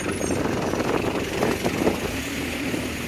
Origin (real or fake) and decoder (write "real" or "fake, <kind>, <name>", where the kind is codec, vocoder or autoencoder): fake, vocoder, BigVGAN v2